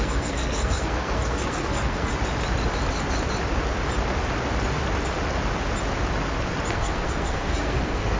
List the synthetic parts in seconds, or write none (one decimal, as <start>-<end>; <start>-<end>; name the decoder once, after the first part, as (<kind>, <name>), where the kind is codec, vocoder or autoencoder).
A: 0.0-2.1 (codec, SNAC); 6.7-8.2